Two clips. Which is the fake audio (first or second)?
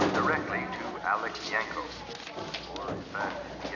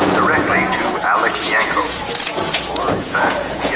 second